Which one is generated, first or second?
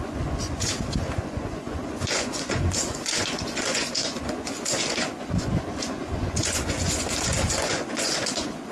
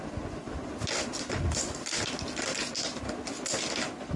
first